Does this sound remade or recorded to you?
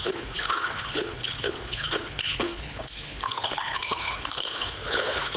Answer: remade